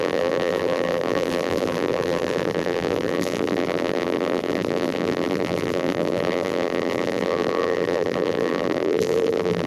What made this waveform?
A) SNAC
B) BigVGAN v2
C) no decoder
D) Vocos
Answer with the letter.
B